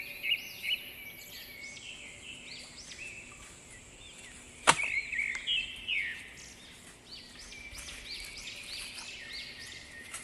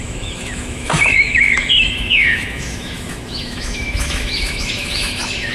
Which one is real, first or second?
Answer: first